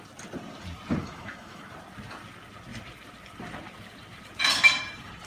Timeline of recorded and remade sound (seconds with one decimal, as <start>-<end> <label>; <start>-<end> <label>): 0.0-1.0 recorded; 1.0-1.7 remade; 1.7-5.3 recorded